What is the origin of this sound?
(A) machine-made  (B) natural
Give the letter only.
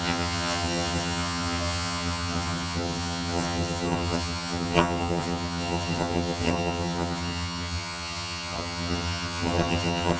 A